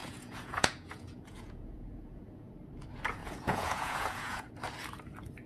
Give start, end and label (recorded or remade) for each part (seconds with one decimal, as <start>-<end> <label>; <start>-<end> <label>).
0.0-2.5 remade; 2.5-3.2 recorded; 3.2-4.5 remade; 4.5-5.5 recorded